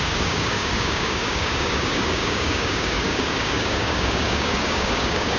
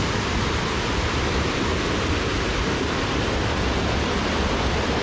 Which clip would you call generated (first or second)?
first